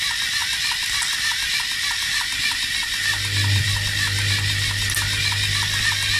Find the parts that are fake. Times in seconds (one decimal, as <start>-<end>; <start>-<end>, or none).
none